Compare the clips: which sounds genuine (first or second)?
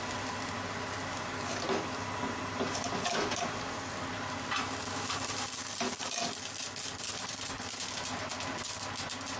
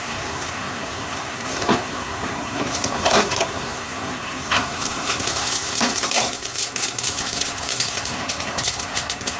first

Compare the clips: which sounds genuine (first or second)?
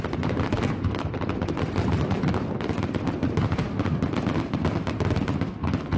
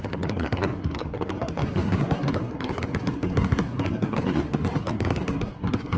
first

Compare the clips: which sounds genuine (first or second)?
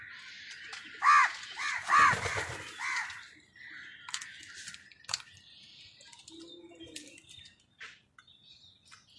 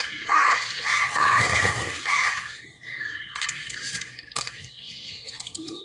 first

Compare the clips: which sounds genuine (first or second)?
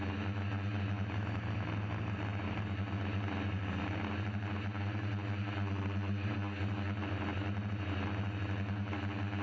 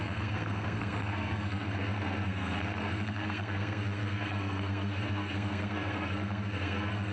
first